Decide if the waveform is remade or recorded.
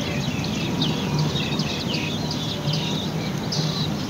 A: recorded